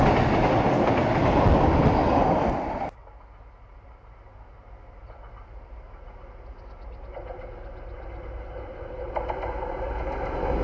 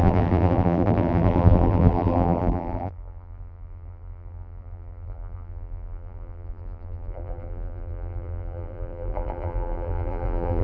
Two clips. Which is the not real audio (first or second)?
second